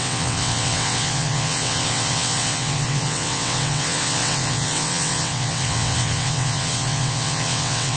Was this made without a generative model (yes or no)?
no